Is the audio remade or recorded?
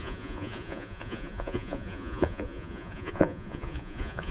remade